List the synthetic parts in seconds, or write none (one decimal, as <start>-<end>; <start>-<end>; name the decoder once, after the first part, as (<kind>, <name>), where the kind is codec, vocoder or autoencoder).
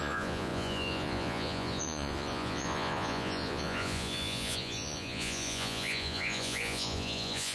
0.0-7.5 (vocoder, Vocos)